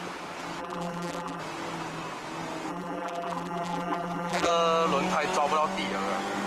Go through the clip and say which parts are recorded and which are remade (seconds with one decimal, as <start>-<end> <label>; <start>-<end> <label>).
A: 0.0-0.6 recorded; 0.6-1.4 remade; 1.4-2.7 recorded; 2.7-4.5 remade; 4.5-6.5 recorded